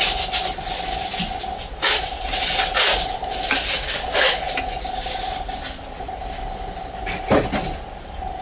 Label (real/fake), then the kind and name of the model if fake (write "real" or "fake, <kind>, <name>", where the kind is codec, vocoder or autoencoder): real